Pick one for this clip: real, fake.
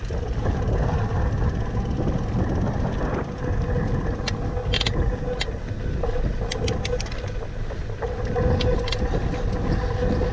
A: real